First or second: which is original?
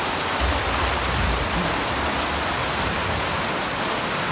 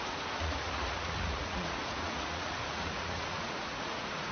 first